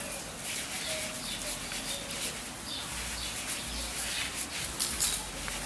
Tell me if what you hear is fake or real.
real